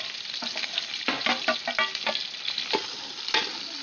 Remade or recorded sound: recorded